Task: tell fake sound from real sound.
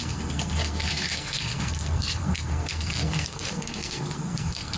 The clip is fake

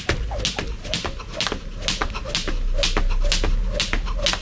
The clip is real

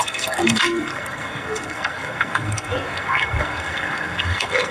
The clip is fake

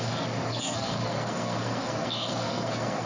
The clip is fake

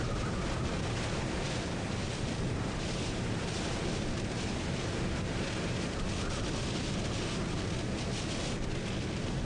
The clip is real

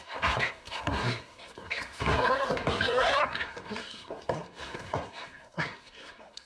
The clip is fake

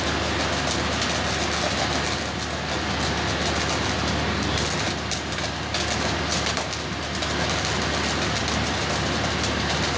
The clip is real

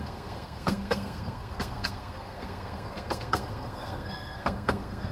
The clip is fake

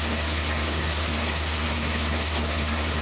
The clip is fake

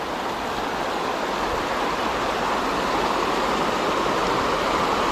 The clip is real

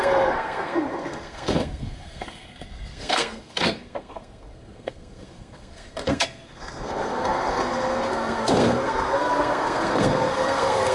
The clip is fake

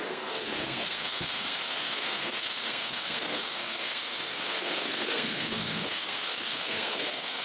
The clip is fake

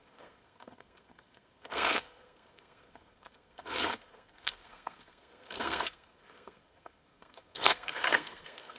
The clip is fake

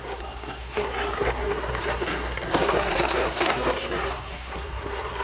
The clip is fake